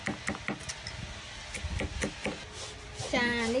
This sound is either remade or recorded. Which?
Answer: recorded